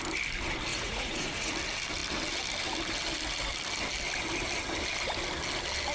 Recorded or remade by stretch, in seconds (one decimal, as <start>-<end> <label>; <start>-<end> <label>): 0.0-0.7 recorded; 0.7-1.5 remade; 1.5-5.9 recorded